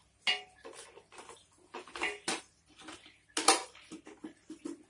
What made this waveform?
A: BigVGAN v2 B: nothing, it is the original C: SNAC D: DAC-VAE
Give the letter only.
B